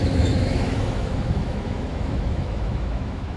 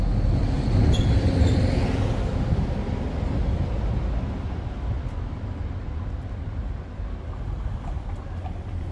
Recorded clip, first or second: second